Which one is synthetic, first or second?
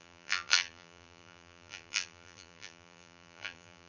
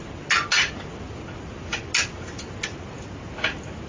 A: first